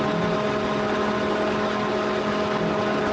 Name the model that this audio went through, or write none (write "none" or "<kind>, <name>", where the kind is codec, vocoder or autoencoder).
none